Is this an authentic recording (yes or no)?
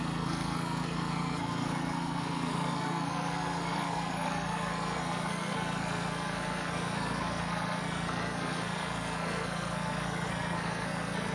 no